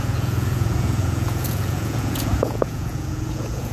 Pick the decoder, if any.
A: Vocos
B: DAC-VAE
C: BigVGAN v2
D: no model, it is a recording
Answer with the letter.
A